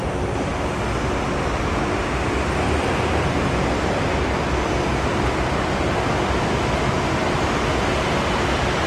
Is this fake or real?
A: real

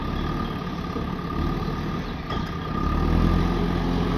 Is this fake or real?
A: real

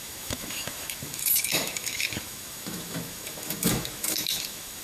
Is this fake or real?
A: fake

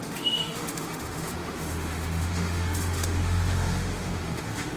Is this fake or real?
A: fake